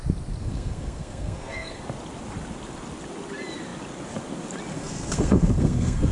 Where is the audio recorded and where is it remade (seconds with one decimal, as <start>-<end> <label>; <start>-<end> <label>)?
0.0-0.4 recorded; 0.4-1.8 remade; 1.8-4.7 recorded; 4.7-6.1 remade